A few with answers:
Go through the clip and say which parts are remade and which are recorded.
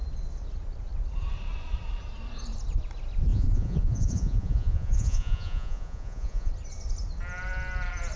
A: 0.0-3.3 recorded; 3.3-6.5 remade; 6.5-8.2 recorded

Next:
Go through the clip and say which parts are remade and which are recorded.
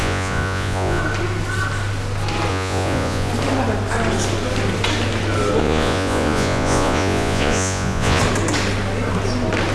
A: 0.0-1.0 remade; 1.0-2.5 recorded; 2.5-3.3 remade; 3.3-5.6 recorded; 5.6-8.2 remade; 8.2-9.7 recorded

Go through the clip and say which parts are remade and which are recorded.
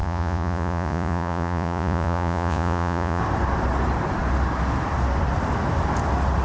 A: 0.0-3.2 remade; 3.2-6.4 recorded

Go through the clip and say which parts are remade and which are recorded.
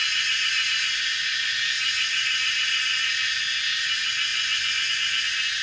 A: 0.0-4.3 recorded; 4.3-4.9 remade; 4.9-5.6 recorded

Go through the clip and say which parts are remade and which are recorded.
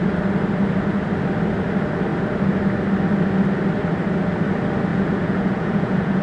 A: 0.0-4.9 recorded; 4.9-6.2 remade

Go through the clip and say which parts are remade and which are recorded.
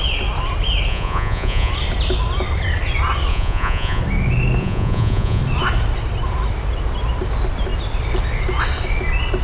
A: 0.0-0.9 recorded; 0.9-1.7 remade; 1.7-3.3 recorded; 3.3-4.0 remade; 4.0-4.6 recorded; 4.6-5.4 remade; 5.4-9.4 recorded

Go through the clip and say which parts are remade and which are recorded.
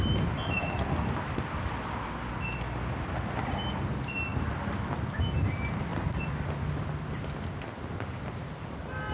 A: 0.0-9.1 recorded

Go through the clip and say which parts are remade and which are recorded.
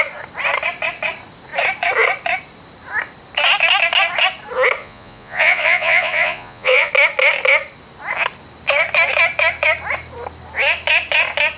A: 0.0-4.8 recorded; 4.8-6.9 remade; 6.9-11.6 recorded